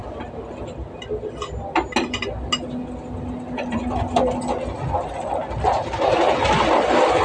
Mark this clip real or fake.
real